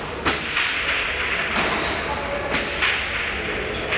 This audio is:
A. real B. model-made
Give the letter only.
A